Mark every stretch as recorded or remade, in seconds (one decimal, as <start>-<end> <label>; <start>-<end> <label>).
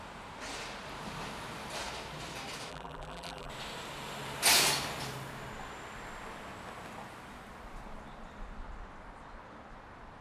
0.0-2.7 recorded; 2.7-3.5 remade; 3.5-10.2 recorded